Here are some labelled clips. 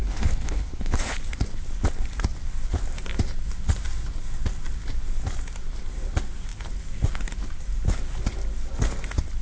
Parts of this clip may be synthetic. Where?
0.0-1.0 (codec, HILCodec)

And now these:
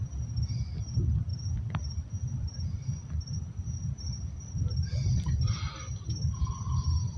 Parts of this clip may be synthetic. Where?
none

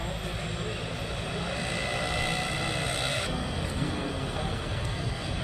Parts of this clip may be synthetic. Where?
3.1-5.4 (codec, SNAC)

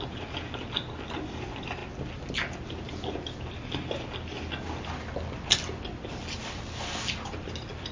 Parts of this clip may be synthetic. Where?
none

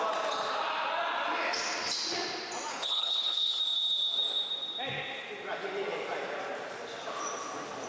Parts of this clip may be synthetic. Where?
2.7-3.6 (codec, HILCodec)

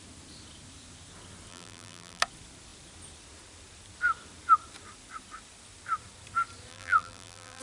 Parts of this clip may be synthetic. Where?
1.5-2.2 (vocoder, BigVGAN v2); 6.7-7.6